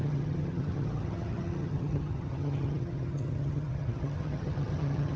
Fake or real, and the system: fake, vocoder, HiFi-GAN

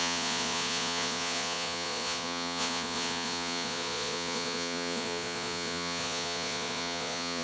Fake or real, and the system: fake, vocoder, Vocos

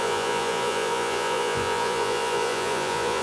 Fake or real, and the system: fake, vocoder, Vocos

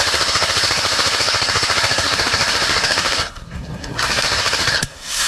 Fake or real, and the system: fake, codec, SNAC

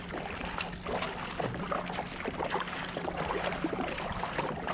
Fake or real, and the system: real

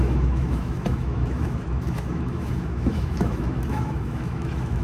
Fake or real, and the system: fake, autoencoder, DAC-VAE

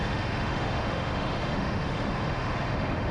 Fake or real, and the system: fake, autoencoder, DAC-VAE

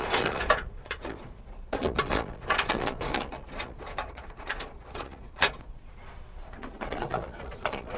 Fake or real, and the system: fake, vocoder, Vocos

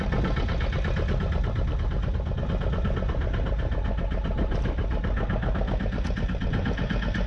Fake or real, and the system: real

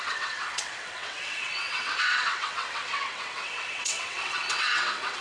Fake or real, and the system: fake, vocoder, WaveNeXt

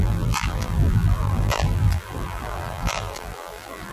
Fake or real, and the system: fake, vocoder, BigVGAN v2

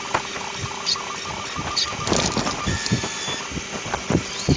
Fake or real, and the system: real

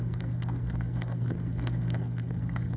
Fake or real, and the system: fake, codec, SNAC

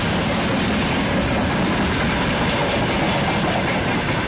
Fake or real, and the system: real